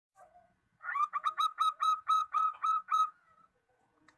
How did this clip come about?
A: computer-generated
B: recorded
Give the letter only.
A